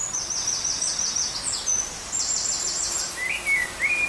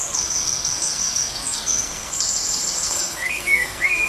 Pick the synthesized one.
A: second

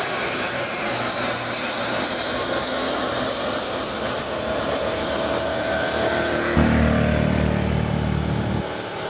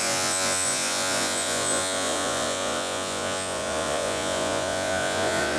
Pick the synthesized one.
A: second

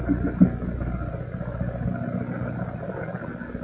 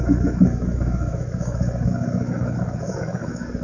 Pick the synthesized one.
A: second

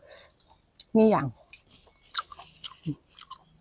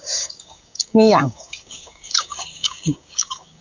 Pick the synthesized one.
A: second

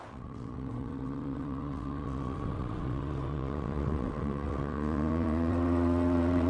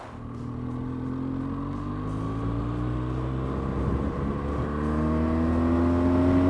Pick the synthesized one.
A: first